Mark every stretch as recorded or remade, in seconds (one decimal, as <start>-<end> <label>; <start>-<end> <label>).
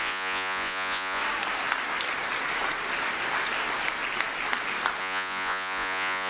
0.0-1.2 remade; 1.2-5.0 recorded; 5.0-6.3 remade